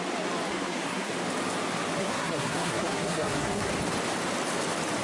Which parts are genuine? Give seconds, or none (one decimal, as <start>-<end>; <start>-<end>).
0.0-0.5; 1.1-2.0; 3.7-5.0